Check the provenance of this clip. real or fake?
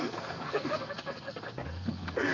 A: fake